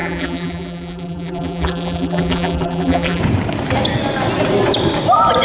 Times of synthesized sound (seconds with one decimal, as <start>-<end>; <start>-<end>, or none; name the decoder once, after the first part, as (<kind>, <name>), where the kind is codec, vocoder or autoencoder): 0.0-3.2 (vocoder, BigVGAN v2)